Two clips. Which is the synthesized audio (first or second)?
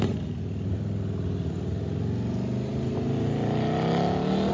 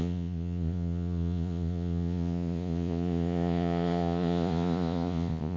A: second